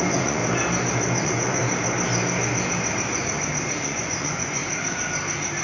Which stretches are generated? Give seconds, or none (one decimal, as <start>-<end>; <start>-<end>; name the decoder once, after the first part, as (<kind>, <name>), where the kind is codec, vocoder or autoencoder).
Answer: 0.0-0.4 (vocoder, Vocos); 1.2-1.6; 3.8-4.6